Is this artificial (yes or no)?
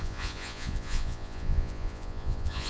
yes